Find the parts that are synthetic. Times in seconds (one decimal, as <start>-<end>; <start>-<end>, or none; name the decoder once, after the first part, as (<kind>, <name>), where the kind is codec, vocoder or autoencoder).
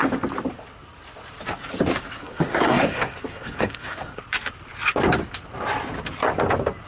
2.2-4.2 (codec, SNAC)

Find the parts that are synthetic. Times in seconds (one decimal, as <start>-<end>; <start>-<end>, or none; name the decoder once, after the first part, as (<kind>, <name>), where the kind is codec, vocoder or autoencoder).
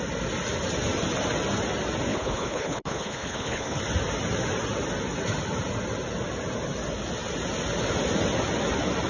2.1-3.8 (codec, HILCodec)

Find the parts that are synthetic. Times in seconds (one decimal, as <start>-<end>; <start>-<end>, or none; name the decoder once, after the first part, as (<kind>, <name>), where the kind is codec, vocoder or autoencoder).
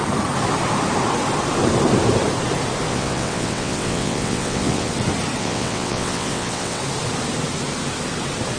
2.9-4.9 (vocoder, WaveNeXt); 5.4-6.8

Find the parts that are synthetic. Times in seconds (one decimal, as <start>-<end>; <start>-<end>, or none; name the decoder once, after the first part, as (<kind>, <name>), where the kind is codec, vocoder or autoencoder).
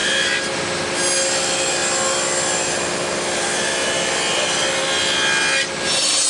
none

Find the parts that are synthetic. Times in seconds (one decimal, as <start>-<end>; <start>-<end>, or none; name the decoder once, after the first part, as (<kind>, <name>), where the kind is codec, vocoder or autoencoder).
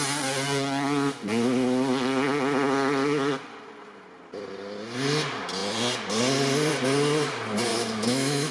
7.7-8.5 (autoencoder, DAC-VAE)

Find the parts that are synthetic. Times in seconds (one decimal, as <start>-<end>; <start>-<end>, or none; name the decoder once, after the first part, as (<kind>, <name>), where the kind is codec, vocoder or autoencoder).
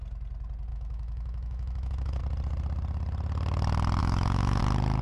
0.7-2.2 (autoencoder, DAC-VAE); 4.0-4.6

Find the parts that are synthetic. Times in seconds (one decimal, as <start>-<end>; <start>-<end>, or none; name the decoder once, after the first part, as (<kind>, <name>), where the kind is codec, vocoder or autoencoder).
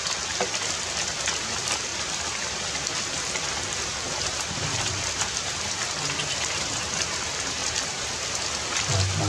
none